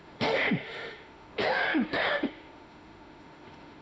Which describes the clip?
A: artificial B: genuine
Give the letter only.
A